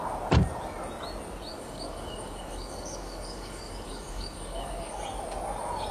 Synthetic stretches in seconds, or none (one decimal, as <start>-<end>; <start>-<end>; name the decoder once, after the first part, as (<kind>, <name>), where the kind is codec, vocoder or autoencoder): 1.5-5.0 (codec, DAC)